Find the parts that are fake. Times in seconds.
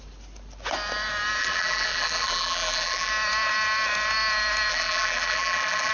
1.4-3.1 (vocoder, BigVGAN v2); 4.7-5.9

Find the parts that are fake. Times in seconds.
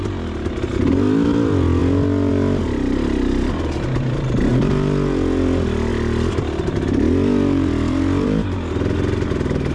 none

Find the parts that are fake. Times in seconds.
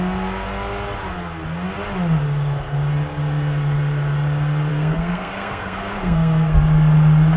4.7-6.6 (codec, SNAC)